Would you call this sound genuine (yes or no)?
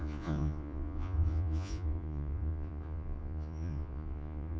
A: no